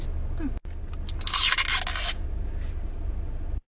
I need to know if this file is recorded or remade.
recorded